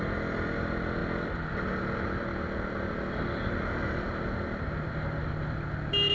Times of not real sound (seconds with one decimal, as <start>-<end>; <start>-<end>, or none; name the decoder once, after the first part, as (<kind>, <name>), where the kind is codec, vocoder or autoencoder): none